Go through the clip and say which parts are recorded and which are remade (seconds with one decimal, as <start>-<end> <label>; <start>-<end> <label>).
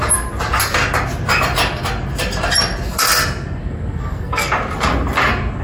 0.0-3.6 recorded; 3.6-4.5 remade; 4.5-5.6 recorded